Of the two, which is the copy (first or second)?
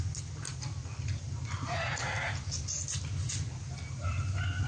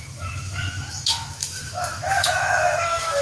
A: second